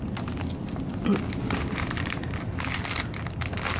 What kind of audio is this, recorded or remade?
recorded